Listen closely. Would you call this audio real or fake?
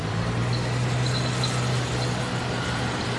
real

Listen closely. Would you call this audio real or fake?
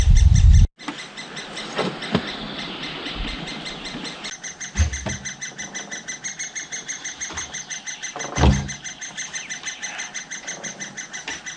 real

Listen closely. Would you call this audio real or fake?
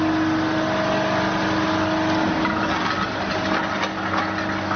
real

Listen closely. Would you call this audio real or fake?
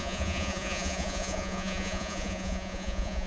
fake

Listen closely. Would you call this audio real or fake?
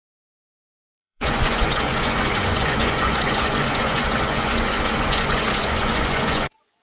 fake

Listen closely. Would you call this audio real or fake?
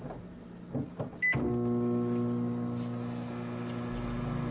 real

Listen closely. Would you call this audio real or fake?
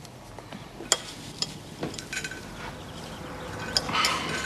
real